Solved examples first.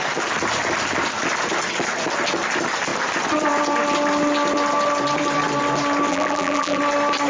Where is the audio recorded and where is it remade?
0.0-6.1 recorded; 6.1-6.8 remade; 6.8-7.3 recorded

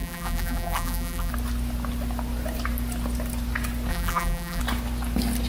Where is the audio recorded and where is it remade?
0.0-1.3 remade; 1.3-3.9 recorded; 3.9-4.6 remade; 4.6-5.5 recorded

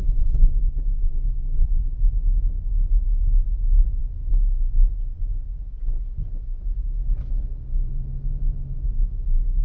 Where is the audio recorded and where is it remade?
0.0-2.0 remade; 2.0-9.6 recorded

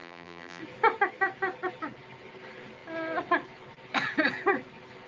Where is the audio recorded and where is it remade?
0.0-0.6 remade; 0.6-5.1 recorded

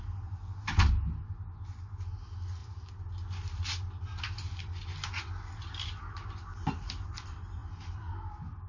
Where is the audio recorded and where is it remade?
0.0-2.6 recorded; 2.6-3.1 remade; 3.1-8.7 recorded

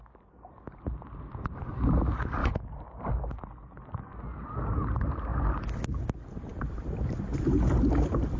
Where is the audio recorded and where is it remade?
0.0-2.4 recorded; 2.4-3.1 remade; 3.1-8.4 recorded

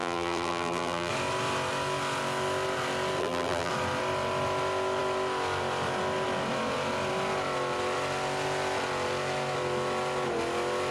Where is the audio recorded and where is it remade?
0.0-1.1 remade; 1.1-3.2 recorded; 3.2-3.7 remade; 3.7-10.9 recorded